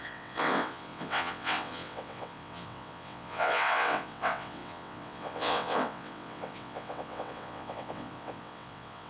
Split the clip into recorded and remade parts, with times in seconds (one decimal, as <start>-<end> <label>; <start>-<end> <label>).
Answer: 0.0-9.1 remade